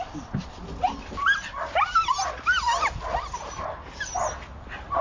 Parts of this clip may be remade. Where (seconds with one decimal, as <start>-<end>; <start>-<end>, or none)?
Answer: none